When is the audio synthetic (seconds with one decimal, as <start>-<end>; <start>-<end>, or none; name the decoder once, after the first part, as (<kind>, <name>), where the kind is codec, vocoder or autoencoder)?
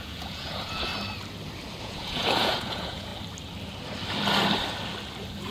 0.0-0.9 (vocoder, Vocos); 1.8-3.1